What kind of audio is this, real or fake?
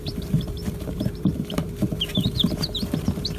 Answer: fake